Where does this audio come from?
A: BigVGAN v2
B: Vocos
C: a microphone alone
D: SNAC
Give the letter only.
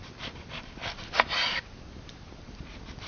A